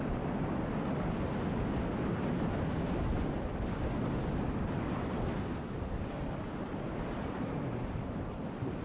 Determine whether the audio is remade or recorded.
recorded